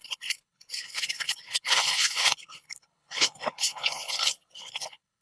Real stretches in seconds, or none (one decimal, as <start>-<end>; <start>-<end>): none